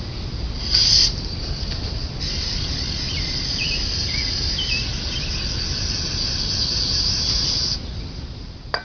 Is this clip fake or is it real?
real